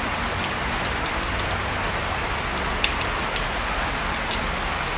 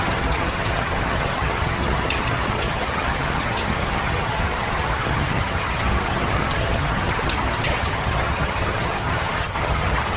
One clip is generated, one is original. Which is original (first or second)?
first